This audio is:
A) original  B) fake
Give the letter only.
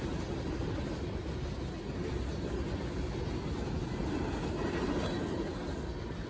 A